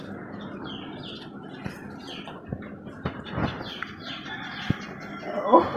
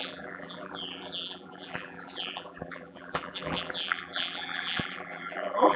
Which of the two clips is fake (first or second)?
second